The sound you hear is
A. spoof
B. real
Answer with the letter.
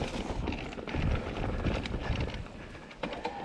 B